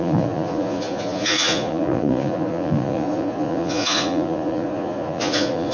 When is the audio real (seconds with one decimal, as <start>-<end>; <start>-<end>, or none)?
none